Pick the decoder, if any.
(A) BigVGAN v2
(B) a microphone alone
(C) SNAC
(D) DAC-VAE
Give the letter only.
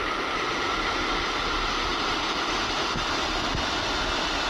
B